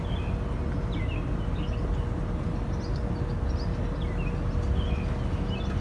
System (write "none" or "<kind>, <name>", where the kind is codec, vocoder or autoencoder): none